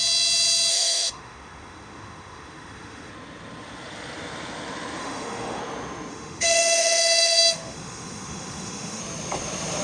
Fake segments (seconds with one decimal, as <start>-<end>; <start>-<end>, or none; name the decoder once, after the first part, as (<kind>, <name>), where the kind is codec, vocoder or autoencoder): 0.7-3.1 (autoencoder, DAC-VAE); 5.0-5.6; 6.1-9.0